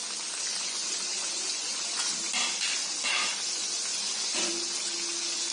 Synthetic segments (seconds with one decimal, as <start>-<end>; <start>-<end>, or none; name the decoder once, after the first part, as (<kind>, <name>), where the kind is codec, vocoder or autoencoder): 0.5-2.0 (vocoder, Vocos); 3.9-4.5